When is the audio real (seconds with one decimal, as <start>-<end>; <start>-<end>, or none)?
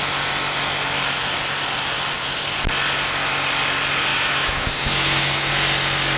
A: 0.0-4.1; 5.5-6.2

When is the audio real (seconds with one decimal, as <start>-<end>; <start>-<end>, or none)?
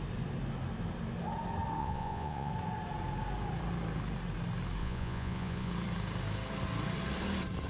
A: 0.0-1.8; 2.5-4.8; 5.7-7.7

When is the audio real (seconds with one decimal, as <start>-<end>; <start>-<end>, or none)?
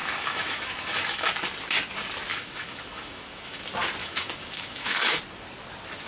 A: 1.3-2.3; 3.6-4.0; 5.2-6.1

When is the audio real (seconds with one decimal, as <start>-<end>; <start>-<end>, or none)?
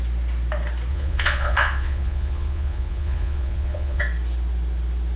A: 0.0-0.9; 4.0-5.2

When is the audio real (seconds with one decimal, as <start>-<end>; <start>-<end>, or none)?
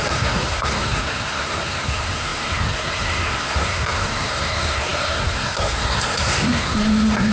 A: none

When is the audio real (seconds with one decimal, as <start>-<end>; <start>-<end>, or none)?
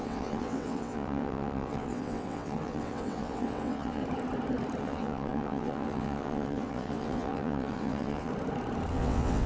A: 4.0-4.8; 8.3-8.9